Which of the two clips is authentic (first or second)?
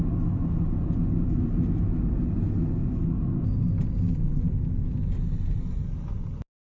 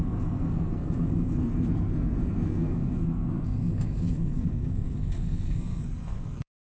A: first